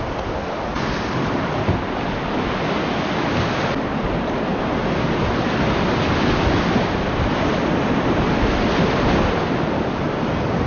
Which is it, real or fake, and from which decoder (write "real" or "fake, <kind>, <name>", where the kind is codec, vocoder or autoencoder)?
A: real